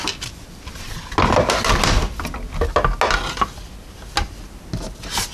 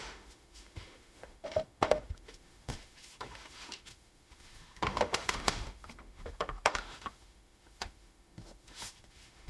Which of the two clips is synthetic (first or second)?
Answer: second